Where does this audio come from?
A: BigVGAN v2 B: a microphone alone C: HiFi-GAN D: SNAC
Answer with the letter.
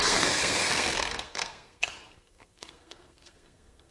D